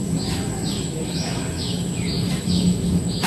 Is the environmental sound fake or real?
fake